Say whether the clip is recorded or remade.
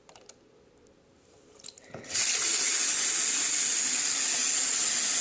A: recorded